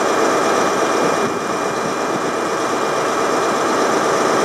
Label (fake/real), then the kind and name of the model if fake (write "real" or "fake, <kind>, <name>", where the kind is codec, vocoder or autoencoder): real